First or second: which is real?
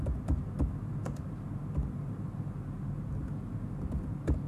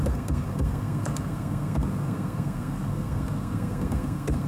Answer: first